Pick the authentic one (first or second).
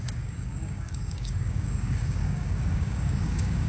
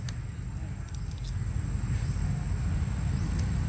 second